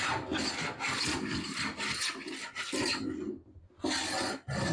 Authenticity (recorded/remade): recorded